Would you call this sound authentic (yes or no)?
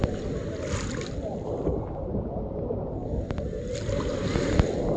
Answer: yes